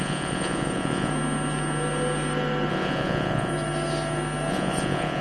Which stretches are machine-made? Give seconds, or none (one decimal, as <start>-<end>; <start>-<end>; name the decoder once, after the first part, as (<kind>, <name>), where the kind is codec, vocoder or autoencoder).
0.0-1.1 (vocoder, Vocos); 2.7-3.5; 4.5-5.2